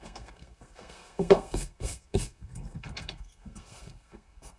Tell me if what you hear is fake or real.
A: fake